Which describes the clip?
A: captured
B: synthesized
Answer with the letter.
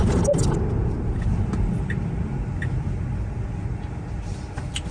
A